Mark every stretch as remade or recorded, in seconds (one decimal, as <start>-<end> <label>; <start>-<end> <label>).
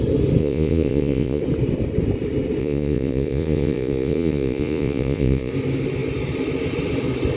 0.0-0.4 recorded; 0.4-1.4 remade; 1.4-2.6 recorded; 2.6-5.5 remade; 5.5-7.4 recorded